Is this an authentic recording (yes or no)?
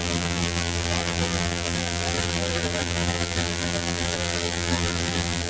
no